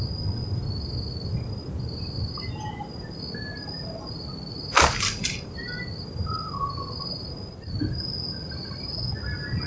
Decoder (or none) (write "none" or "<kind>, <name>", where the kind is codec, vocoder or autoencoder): none